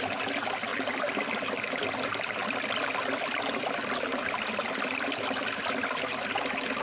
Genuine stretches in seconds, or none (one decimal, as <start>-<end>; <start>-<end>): 0.0-6.8